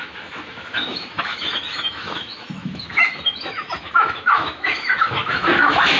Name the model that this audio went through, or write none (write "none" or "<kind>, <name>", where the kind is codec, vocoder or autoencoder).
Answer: autoencoder, DAC-VAE